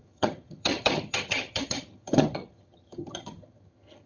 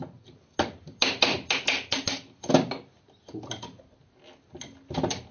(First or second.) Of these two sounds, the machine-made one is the first